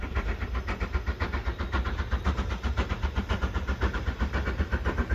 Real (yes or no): yes